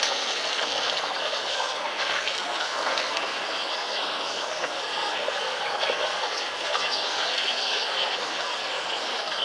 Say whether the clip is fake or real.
fake